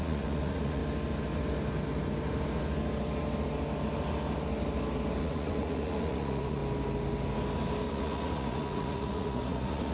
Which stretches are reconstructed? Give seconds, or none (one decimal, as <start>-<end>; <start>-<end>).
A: 0.0-0.8; 5.2-6.6; 7.9-9.9